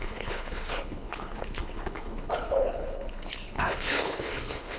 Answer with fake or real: fake